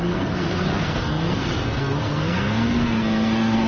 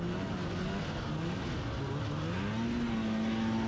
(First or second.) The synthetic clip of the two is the first